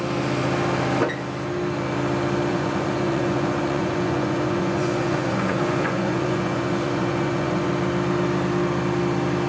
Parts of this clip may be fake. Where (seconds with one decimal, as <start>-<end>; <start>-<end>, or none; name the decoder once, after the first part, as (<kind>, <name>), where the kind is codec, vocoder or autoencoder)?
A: 2.5-7.7 (vocoder, Vocos)